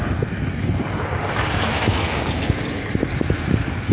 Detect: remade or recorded recorded